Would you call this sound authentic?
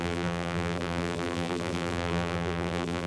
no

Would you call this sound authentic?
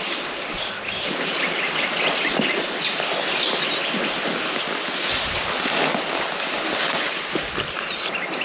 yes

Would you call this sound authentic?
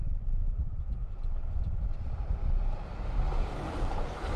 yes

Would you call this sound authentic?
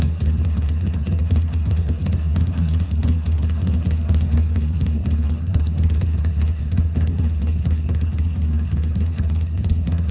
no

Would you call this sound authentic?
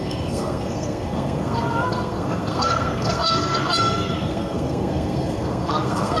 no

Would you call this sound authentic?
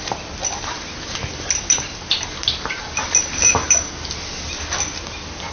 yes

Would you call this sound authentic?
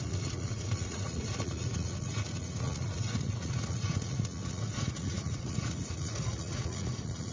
no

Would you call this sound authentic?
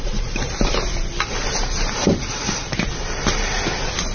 yes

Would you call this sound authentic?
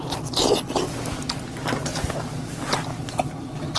yes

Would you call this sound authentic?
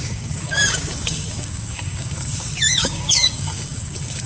no